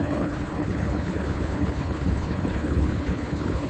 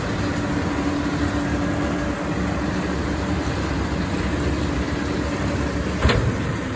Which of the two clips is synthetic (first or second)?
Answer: first